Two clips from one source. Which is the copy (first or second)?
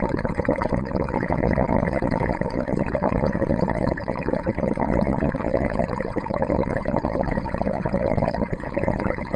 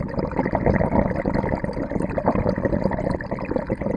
first